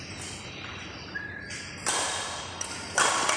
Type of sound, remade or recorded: recorded